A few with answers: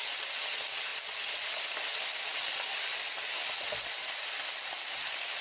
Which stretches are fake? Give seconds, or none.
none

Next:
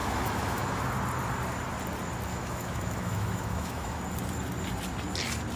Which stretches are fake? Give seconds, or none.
0.0-0.9 (autoencoder, DAC-VAE); 2.3-4.0